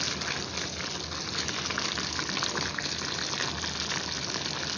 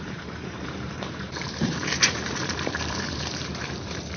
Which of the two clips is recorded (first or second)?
first